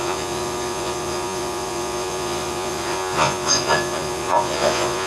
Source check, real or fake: fake